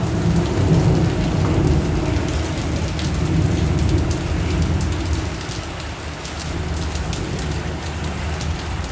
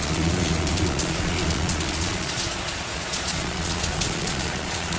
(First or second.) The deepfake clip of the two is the second